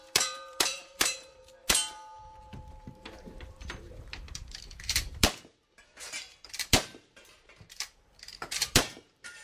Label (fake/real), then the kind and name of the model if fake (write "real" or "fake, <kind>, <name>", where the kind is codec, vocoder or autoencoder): fake, vocoder, BigVGAN v2